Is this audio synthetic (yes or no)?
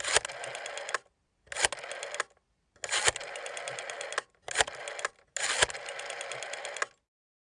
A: no